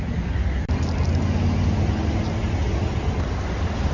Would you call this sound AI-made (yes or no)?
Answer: no